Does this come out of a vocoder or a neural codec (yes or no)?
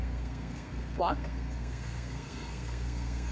yes